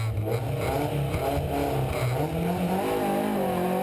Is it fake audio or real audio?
real